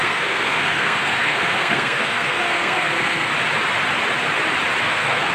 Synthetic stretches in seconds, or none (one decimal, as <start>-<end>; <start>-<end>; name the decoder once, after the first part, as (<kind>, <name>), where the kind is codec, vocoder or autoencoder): 0.0-3.3 (codec, SNAC); 4.8-5.3